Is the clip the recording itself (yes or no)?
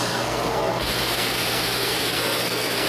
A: no